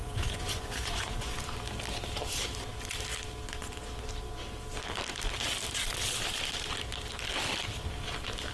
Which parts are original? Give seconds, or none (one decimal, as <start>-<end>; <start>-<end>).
1.3-8.5

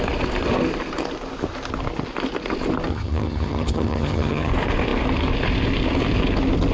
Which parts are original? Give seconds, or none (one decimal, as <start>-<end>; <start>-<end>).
0.0-2.9; 4.5-6.7

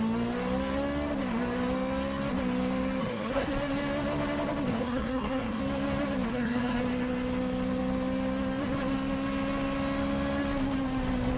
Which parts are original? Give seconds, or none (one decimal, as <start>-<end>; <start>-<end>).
0.0-3.0; 3.5-4.7; 5.6-6.3; 6.8-11.4

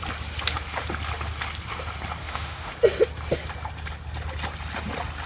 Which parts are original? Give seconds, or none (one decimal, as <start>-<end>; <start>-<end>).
0.0-2.2; 2.7-5.3

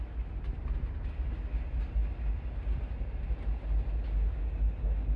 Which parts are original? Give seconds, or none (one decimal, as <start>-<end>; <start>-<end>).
0.0-5.2

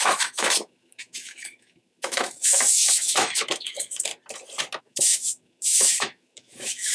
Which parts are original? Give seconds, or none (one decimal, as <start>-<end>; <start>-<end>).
4.1-4.8

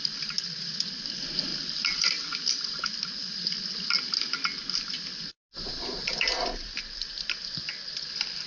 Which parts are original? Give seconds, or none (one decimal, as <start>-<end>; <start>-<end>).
0.0-1.5; 2.8-8.5

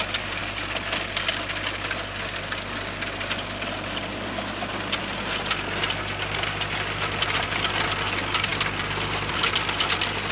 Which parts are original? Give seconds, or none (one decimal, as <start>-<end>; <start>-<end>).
0.0-10.3